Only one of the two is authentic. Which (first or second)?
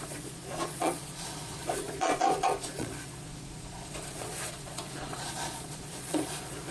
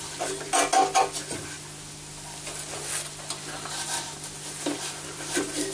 second